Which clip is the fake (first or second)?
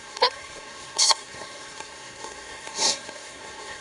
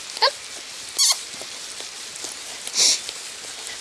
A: first